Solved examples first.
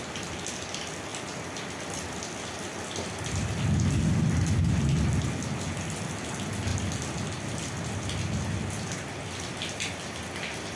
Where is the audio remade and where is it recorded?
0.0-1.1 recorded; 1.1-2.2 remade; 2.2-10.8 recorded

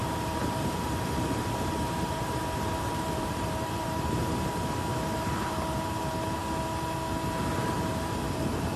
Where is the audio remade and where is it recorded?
0.0-4.5 remade; 4.5-8.8 recorded

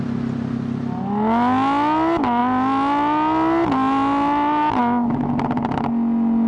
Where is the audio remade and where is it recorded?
0.0-6.5 recorded

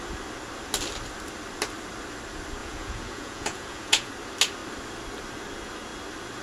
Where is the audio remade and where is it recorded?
0.0-2.6 recorded; 2.6-4.1 remade; 4.1-6.4 recorded

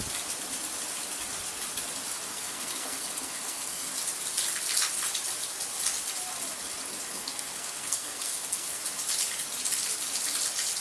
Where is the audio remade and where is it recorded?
0.0-2.3 recorded; 2.3-3.9 remade; 3.9-7.1 recorded; 7.1-8.8 remade; 8.8-10.8 recorded

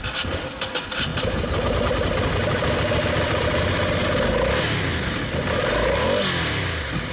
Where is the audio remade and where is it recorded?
0.0-7.1 recorded

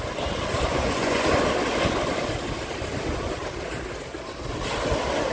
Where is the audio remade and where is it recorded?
0.0-0.7 recorded; 0.7-1.3 remade; 1.3-5.3 recorded